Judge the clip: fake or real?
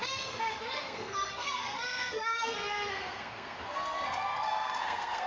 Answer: fake